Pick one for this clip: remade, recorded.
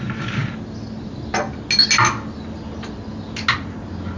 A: recorded